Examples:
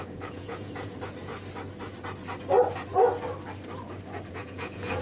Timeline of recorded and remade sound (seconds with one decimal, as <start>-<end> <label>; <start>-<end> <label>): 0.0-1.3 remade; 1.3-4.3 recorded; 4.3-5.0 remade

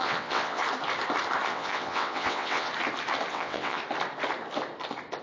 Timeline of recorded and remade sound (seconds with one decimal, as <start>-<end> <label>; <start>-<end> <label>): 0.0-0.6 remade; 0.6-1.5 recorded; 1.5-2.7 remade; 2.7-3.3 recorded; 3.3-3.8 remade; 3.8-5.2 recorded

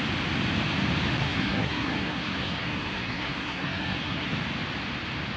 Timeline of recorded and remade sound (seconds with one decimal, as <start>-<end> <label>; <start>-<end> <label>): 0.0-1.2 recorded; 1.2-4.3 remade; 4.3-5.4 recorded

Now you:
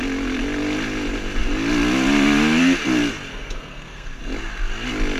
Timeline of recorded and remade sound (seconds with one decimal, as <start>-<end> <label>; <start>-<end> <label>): 0.0-3.3 recorded; 3.3-4.2 remade; 4.2-5.2 recorded